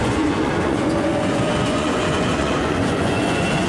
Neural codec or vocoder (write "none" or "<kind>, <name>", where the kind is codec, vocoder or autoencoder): vocoder, Vocos